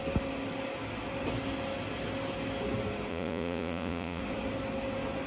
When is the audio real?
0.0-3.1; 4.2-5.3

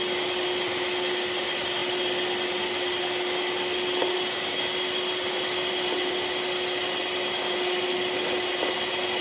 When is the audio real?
0.0-9.2

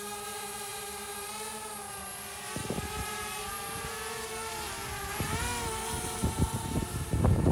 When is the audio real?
5.5-6.0

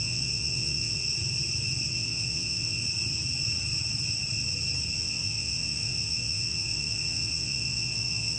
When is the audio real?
1.1-1.9; 2.8-5.0

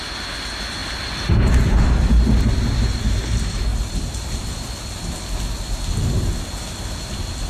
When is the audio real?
0.0-7.5

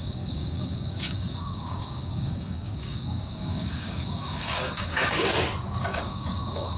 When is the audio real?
5.3-5.8

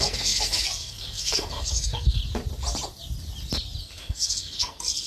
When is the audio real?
2.2-3.8

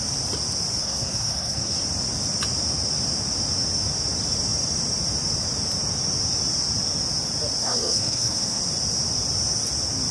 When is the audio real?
0.0-0.8; 1.8-7.6; 8.6-10.1